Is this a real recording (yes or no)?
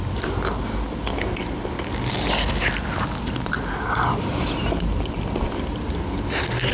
yes